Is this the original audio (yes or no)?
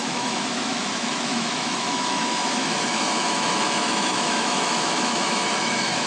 no